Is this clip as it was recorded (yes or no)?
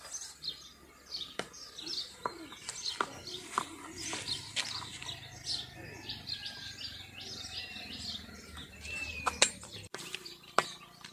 yes